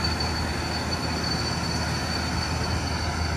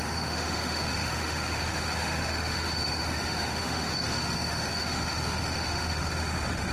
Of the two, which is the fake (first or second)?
second